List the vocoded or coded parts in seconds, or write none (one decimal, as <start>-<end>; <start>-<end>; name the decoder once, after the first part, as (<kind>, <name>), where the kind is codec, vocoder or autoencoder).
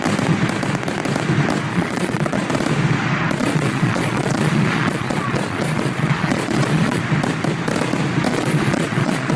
1.7-2.5 (vocoder, Vocos); 3.4-7.0; 8.3-9.4